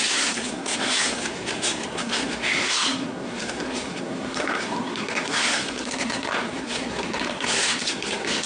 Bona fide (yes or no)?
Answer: no